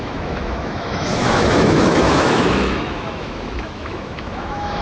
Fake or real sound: fake